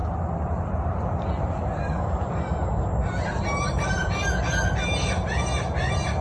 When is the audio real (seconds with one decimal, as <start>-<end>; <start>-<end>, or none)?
0.0-6.2

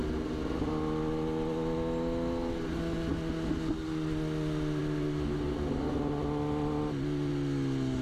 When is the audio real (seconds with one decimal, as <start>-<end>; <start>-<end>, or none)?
0.0-8.0

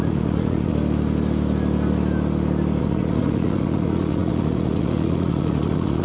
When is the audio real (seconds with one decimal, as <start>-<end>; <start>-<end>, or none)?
0.7-2.8

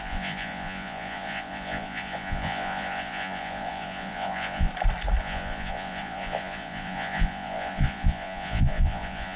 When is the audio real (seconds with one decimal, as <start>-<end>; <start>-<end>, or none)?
4.7-5.2

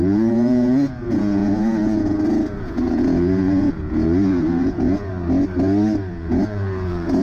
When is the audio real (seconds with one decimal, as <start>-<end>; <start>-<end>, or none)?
5.1-6.1

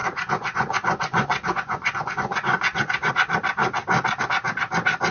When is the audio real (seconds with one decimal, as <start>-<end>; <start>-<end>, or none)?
3.1-5.1

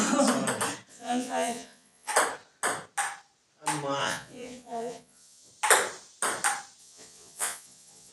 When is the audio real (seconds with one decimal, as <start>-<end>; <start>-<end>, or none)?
0.0-0.9; 2.1-4.0; 5.5-6.8

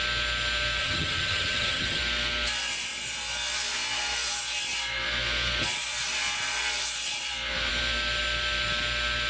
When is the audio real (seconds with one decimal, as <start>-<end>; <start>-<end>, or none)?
0.0-0.8; 2.0-9.3